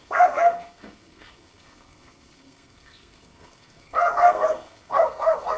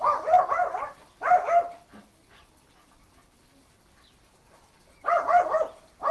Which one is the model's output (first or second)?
first